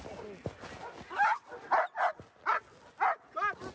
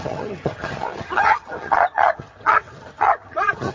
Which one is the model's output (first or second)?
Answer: second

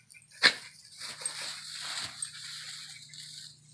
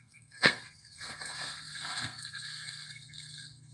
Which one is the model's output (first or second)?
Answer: second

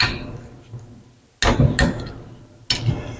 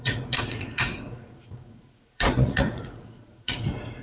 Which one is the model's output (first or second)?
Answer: second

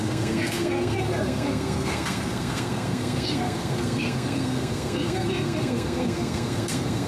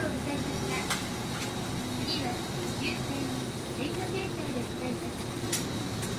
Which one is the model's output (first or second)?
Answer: first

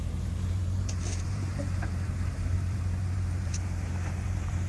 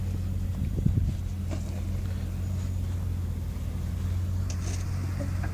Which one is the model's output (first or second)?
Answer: first